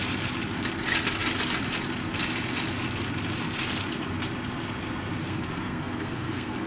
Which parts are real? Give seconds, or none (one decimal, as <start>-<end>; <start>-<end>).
0.0-5.2